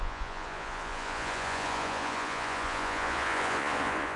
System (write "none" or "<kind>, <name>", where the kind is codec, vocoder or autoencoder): vocoder, Vocos